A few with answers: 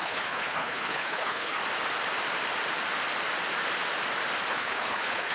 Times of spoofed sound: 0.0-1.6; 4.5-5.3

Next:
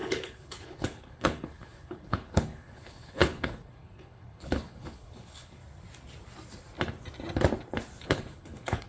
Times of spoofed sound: 0.0-5.6; 8.0-8.9

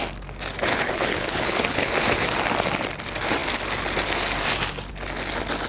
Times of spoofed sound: 0.7-1.9

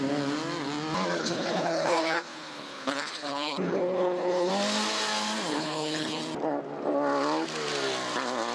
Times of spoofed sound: 1.2-4.5; 5.5-6.2

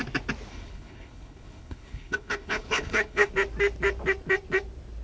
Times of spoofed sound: 0.5-3.3

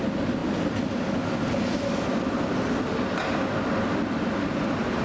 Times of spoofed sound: none